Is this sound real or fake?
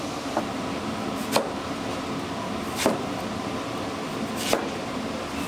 real